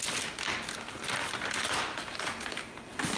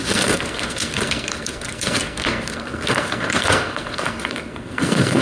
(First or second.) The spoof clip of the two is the second